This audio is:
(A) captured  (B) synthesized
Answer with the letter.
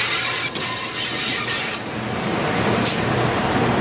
B